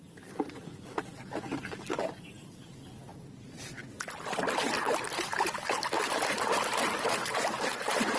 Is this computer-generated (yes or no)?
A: no